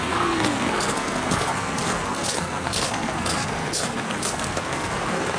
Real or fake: fake